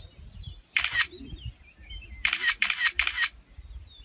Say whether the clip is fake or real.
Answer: real